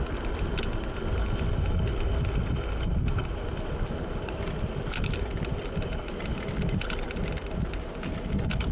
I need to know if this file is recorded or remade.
recorded